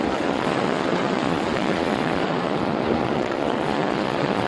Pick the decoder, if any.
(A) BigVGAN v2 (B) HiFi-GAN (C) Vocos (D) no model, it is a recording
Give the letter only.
C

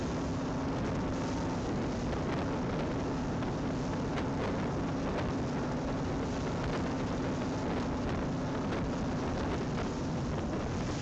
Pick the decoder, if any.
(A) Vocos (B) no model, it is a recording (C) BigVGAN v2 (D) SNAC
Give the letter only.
B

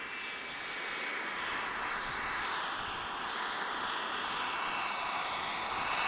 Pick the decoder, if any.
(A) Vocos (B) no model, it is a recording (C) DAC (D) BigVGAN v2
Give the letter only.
B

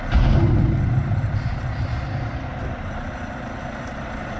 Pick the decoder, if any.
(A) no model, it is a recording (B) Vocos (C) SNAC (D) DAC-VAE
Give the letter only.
A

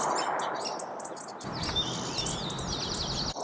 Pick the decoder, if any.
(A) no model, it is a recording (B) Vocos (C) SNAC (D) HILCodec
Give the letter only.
A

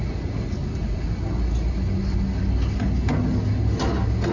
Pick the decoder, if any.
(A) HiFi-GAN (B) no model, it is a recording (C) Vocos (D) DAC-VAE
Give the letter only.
B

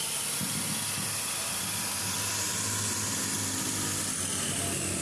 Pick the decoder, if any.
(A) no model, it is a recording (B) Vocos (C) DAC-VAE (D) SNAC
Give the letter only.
A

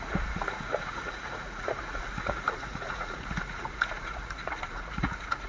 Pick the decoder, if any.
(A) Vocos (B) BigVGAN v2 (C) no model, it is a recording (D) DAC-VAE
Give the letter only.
A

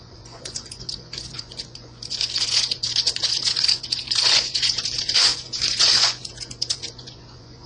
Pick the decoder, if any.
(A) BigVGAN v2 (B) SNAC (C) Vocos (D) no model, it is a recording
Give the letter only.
C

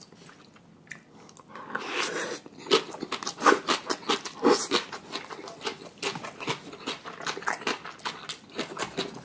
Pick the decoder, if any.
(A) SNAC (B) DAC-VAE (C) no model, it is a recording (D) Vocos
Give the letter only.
C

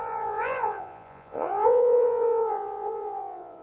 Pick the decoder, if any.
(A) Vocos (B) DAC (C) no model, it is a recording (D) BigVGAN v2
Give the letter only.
A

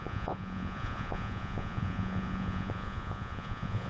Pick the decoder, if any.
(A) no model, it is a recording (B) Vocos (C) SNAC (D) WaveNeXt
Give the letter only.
B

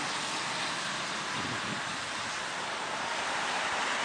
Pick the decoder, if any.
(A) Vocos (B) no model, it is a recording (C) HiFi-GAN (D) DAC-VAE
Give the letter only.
B